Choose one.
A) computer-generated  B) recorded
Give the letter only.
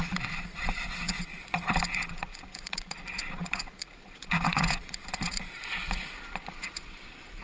A